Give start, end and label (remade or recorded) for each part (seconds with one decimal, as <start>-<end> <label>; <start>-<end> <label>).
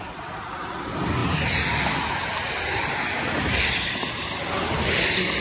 0.0-5.4 recorded